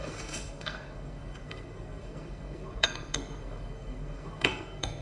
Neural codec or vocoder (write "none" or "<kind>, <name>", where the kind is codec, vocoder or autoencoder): codec, SNAC